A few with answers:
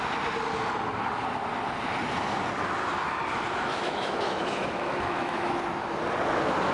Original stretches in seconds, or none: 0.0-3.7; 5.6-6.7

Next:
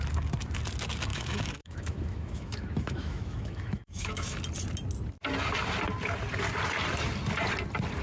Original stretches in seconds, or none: 0.0-1.1; 4.4-8.0

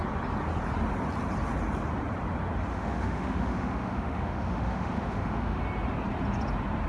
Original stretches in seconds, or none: 0.0-2.7; 5.6-6.9

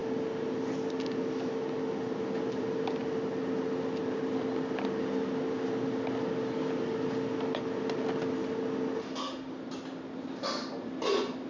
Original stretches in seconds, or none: 0.0-9.0; 9.5-11.5

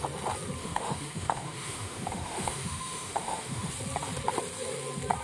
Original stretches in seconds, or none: 0.0-0.6; 3.7-5.2

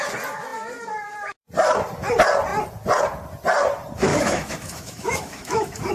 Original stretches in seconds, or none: 0.0-4.1

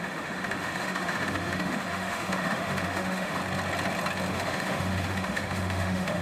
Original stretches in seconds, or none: 3.4-4.3